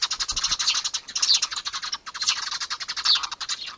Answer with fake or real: real